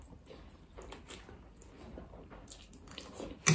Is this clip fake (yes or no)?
no